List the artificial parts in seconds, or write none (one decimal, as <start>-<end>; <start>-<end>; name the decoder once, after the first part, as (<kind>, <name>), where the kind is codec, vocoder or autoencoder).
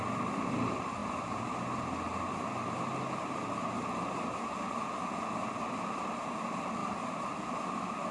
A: 6.8-7.3 (vocoder, BigVGAN v2)